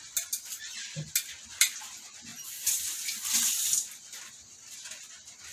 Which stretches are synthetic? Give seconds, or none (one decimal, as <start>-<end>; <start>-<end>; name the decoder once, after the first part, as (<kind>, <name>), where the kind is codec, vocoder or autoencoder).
none